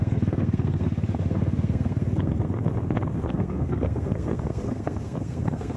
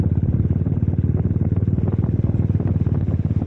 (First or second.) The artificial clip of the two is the first